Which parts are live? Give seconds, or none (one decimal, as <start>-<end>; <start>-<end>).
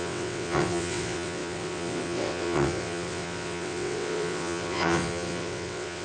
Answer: none